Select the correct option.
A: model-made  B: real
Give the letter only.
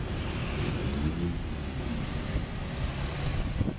B